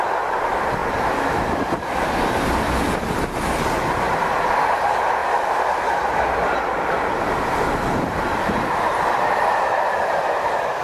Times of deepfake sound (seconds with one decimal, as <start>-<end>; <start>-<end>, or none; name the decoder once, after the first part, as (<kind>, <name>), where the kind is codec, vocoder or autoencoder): none